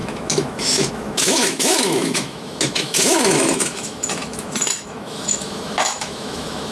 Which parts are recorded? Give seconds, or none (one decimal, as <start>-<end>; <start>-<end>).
none